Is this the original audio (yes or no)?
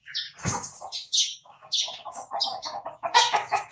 no